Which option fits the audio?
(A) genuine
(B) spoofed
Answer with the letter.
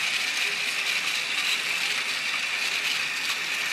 A